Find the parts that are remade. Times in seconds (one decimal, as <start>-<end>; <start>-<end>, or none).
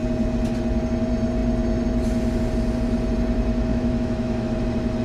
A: 3.7-4.5